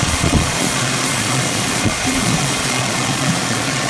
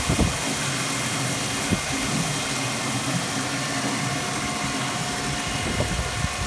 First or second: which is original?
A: second